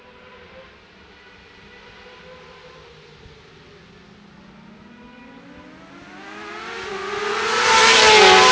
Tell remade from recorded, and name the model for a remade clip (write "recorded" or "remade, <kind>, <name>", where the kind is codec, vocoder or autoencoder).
recorded